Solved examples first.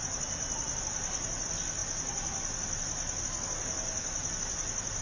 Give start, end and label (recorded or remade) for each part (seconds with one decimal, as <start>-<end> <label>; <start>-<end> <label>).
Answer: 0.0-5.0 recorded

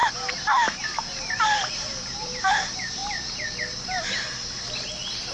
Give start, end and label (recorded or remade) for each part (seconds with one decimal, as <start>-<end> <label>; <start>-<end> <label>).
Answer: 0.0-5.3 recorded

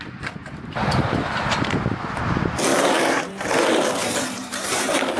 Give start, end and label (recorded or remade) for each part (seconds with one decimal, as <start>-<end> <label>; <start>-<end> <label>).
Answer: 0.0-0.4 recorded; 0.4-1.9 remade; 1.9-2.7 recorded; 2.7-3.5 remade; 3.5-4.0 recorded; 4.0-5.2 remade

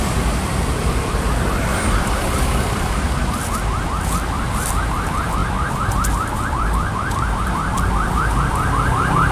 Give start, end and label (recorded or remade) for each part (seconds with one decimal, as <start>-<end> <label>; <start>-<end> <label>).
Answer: 0.0-5.4 recorded; 5.4-7.8 remade; 7.8-9.3 recorded

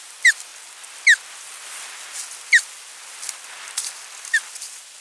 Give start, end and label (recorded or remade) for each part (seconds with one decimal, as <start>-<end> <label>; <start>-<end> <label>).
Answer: 0.0-5.0 recorded

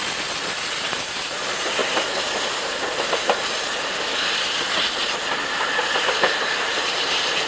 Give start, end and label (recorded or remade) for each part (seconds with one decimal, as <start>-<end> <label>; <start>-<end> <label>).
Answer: 0.0-0.8 recorded; 0.8-1.8 remade; 1.8-6.2 recorded; 6.2-7.5 remade

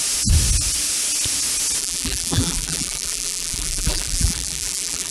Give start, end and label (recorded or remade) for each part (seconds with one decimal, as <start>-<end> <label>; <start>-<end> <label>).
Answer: 0.0-1.8 recorded; 1.8-5.1 remade